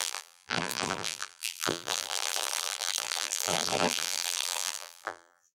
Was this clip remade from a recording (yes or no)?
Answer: yes